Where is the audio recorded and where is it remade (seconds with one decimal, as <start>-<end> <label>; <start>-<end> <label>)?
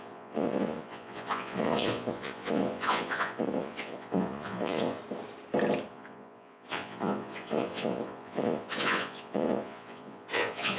0.0-5.0 remade; 5.0-5.9 recorded; 5.9-10.8 remade